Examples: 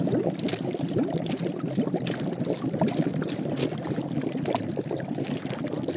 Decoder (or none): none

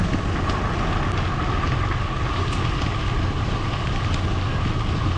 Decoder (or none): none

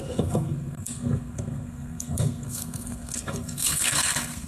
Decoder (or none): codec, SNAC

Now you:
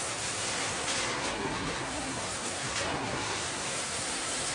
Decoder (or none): codec, SNAC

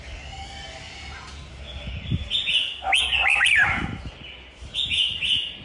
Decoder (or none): none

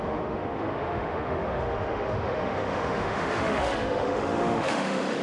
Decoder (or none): autoencoder, DAC-VAE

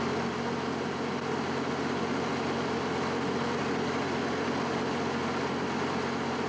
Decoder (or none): none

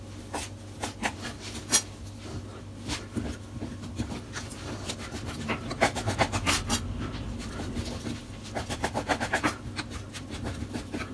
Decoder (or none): none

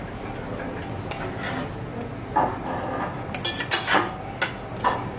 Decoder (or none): none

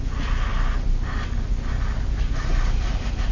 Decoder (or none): none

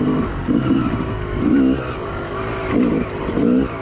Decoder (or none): none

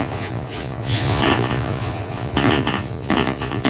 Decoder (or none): vocoder, Vocos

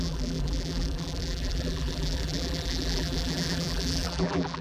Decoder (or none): vocoder, BigVGAN v2